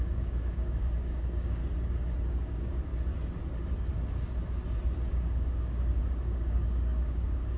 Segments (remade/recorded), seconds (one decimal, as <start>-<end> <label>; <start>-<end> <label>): 0.0-1.6 remade; 1.6-2.3 recorded; 2.3-2.9 remade; 2.9-5.1 recorded; 5.1-7.6 remade